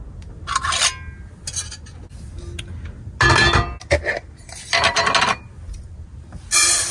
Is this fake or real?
real